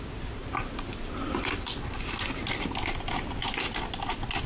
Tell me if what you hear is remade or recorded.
recorded